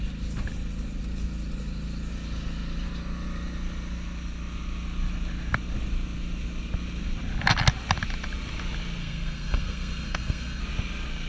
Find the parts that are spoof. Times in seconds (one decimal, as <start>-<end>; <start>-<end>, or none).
9.0-10.6